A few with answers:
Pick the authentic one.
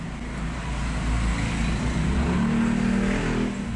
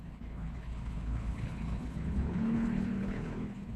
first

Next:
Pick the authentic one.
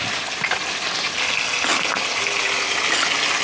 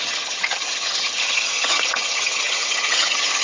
first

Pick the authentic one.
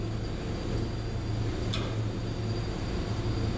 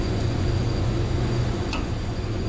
first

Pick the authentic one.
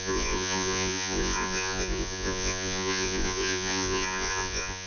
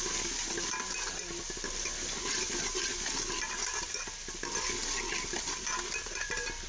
second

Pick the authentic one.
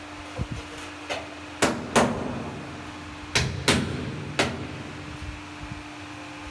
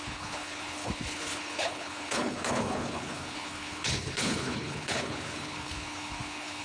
first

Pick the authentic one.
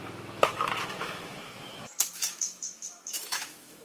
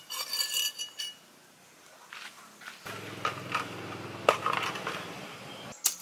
second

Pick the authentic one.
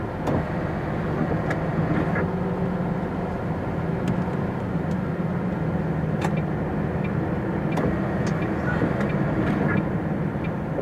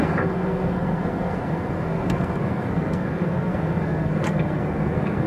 first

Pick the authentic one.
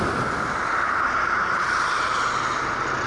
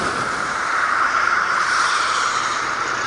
first